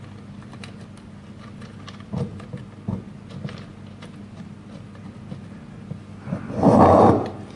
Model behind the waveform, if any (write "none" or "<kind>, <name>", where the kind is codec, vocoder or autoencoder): none